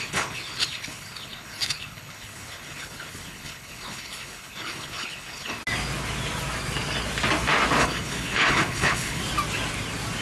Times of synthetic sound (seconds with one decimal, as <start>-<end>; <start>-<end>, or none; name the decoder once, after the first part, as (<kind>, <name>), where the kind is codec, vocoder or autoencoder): 0.0-5.6 (codec, HILCodec); 7.8-9.2